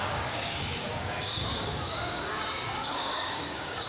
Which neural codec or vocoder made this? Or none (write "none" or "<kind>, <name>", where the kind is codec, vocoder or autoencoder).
codec, DAC